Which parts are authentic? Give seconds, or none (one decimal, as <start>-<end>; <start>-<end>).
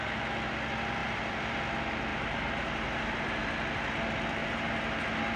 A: 0.0-1.0; 1.6-2.1; 3.4-4.4; 5.0-5.4